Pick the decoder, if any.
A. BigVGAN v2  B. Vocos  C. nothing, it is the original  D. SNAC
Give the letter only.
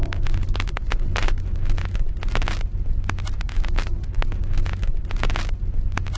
C